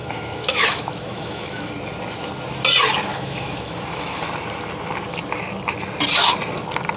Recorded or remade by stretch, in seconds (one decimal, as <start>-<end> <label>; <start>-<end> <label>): 0.0-1.7 remade; 1.7-3.1 recorded; 3.1-4.2 remade; 4.2-7.0 recorded